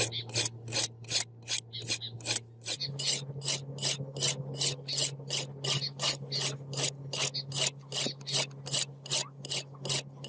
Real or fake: real